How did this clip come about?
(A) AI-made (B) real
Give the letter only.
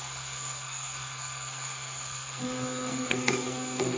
A